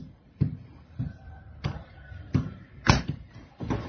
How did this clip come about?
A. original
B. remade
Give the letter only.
B